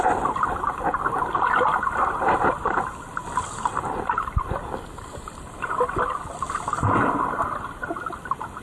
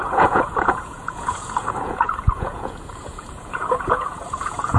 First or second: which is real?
first